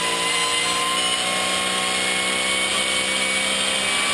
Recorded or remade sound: recorded